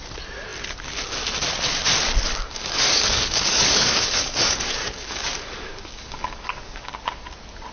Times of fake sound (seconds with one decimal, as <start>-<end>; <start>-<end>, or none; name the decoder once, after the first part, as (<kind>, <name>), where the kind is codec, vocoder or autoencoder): 2.3-6.9 (codec, DAC)